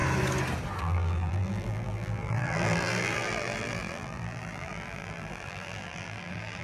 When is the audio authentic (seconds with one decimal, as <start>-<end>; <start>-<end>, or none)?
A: 0.0-0.8

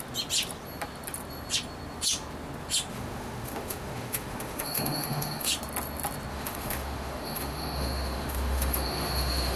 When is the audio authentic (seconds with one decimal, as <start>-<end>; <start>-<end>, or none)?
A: 0.0-2.9; 5.5-6.3